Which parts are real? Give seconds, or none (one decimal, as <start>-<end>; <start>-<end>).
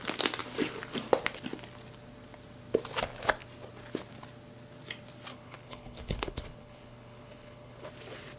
0.0-5.3; 7.9-8.4